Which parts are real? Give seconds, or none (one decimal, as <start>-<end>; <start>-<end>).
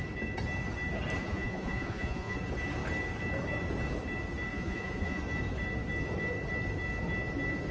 0.0-1.2; 2.4-4.5; 5.2-7.7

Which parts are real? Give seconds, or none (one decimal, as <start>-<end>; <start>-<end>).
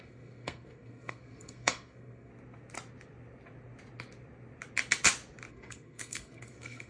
2.3-5.5